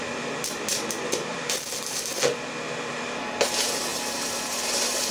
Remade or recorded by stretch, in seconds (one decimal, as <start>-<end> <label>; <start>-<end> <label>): 0.0-0.7 recorded; 0.7-2.1 remade; 2.1-3.9 recorded; 3.9-5.1 remade